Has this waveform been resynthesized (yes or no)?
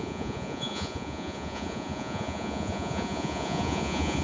yes